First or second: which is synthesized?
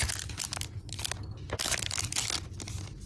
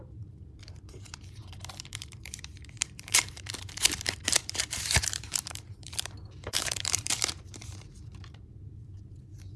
second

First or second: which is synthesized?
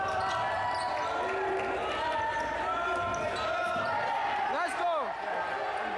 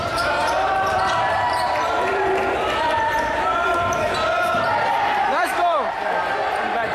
second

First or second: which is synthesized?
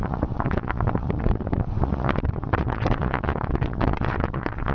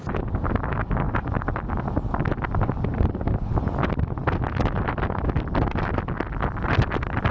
first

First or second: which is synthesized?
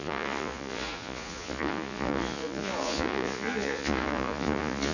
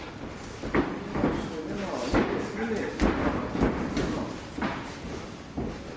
first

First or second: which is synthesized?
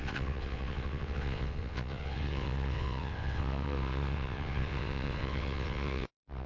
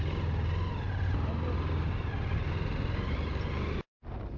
first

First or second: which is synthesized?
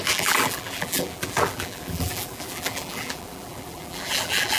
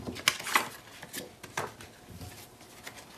first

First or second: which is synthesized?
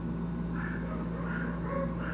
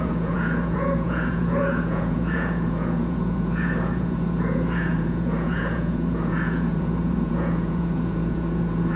second